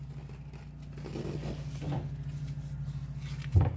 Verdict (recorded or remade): recorded